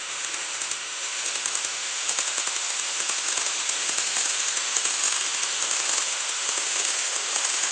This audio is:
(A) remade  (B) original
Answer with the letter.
A